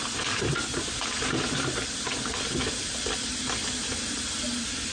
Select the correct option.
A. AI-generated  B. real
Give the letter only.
B